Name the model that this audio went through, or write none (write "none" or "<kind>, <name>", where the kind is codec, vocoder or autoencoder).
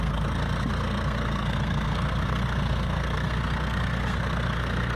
codec, SNAC